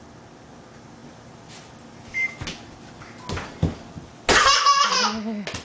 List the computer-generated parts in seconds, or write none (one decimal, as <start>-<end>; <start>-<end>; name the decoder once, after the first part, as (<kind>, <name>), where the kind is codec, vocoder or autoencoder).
none